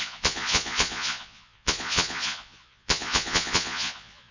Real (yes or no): no